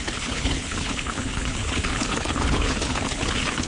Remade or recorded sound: remade